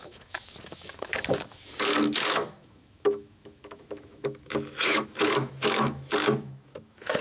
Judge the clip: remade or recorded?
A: remade